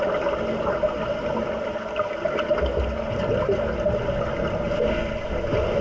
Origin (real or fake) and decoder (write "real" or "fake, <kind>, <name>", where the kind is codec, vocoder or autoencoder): real